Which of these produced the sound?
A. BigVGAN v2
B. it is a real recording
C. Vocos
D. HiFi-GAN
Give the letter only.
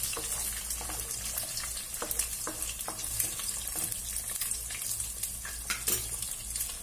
B